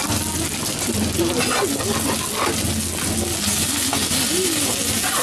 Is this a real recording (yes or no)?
yes